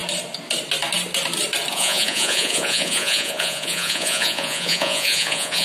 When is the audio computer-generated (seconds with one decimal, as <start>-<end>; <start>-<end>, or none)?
1.7-5.6